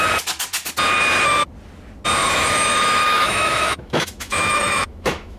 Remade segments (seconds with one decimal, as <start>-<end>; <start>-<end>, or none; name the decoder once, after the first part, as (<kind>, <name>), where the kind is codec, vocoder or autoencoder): 2.2-5.4 (autoencoder, DAC-VAE)